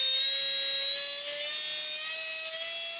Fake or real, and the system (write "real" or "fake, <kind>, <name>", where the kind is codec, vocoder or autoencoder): real